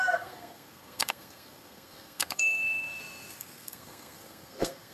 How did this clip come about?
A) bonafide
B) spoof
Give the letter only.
B